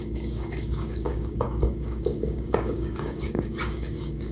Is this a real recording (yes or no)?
no